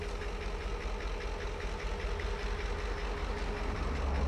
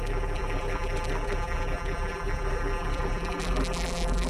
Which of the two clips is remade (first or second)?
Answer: second